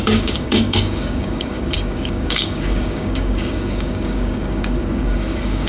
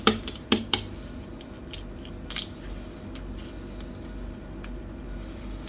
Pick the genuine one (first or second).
second